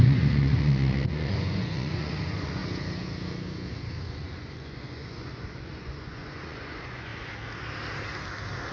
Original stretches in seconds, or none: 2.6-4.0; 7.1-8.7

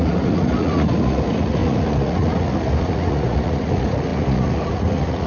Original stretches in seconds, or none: none

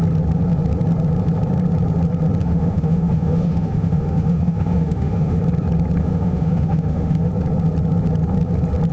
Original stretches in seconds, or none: 0.0-2.4; 5.4-6.0; 7.3-8.9